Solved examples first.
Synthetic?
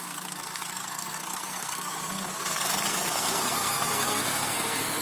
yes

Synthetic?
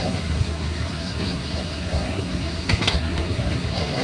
yes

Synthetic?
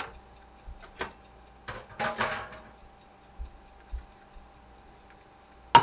no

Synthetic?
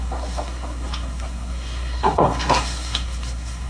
yes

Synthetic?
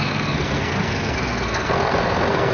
yes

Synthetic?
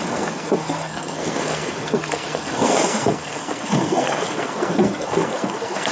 yes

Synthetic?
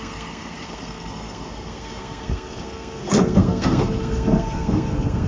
yes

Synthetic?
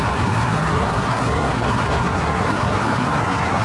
yes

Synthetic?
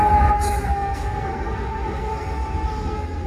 yes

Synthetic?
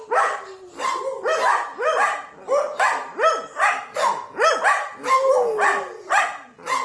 no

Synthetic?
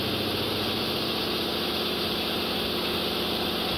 no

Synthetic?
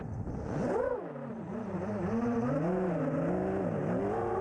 no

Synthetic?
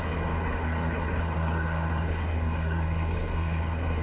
yes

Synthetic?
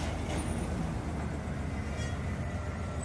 no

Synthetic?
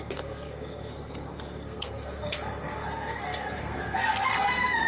yes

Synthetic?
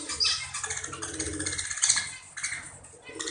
no